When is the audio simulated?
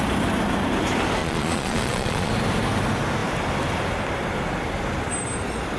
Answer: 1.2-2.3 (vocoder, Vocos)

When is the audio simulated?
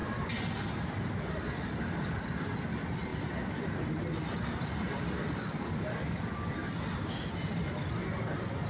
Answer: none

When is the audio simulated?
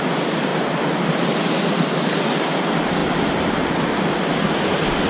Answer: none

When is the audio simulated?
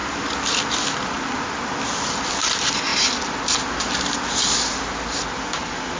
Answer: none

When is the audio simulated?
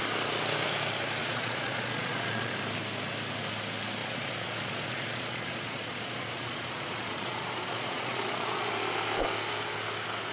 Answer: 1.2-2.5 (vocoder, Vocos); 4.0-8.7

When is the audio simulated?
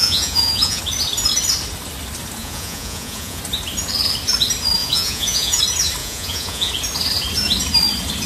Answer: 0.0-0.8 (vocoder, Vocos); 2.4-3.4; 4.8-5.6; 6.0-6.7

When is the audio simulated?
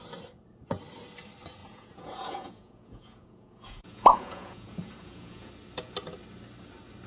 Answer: 1.6-5.5 (vocoder, Vocos)